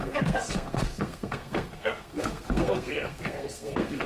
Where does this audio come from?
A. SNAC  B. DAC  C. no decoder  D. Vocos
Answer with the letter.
A